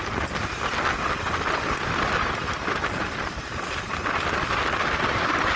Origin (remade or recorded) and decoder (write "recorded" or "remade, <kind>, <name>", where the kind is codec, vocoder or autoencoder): recorded